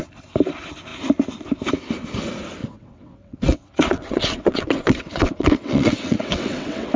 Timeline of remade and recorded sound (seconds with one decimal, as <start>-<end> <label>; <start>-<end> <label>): 0.0-2.6 recorded; 2.6-7.0 remade